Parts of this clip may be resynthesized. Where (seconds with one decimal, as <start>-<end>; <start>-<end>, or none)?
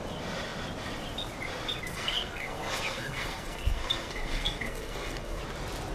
1.9-5.4